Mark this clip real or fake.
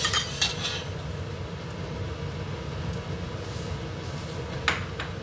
real